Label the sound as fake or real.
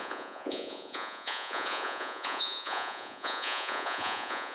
fake